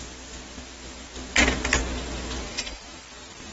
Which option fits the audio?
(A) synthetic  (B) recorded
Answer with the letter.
B